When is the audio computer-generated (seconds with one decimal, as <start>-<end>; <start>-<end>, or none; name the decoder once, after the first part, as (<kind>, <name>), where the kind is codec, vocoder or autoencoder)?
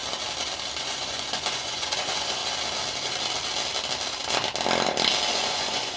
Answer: 0.8-2.4 (vocoder, Vocos); 5.3-6.0